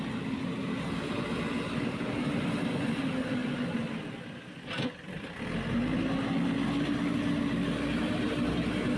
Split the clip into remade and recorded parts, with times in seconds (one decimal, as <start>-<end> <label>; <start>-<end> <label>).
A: 0.0-9.0 recorded